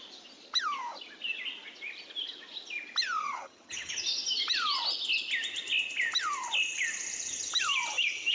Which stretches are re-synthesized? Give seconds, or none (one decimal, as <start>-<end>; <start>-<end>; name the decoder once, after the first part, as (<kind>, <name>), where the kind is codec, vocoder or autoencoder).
3.2-3.9 (vocoder, HiFi-GAN)